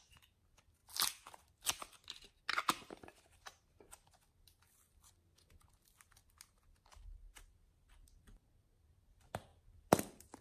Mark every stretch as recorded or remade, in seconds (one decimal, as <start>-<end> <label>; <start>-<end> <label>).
0.0-10.4 recorded